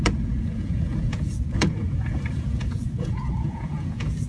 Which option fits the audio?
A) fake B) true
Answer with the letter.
A